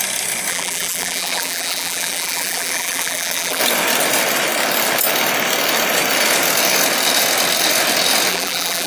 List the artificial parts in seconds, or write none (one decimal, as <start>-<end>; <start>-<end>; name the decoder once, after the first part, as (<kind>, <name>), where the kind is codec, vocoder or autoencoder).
0.5-3.6 (vocoder, BigVGAN v2); 8.3-8.9